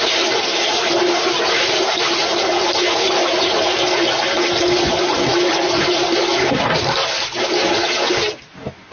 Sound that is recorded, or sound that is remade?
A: recorded